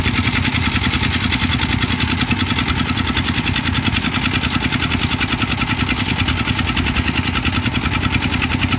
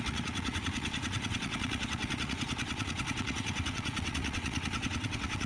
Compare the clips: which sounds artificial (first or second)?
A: second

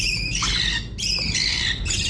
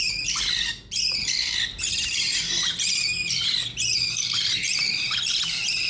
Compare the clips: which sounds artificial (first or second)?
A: second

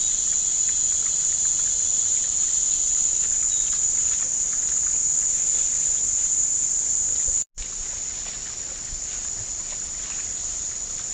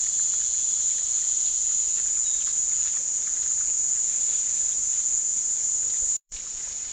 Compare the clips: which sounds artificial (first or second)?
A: second